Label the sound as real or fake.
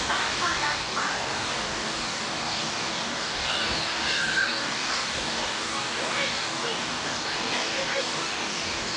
fake